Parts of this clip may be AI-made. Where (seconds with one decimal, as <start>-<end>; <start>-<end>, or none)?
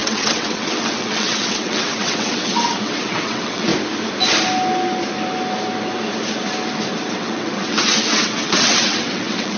0.0-3.7; 7.1-9.6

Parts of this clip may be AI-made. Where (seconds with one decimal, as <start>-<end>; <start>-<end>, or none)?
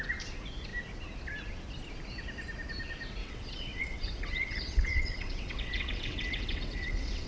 3.2-7.3